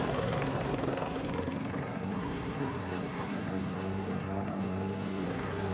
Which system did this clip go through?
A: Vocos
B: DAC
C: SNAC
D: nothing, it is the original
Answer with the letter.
C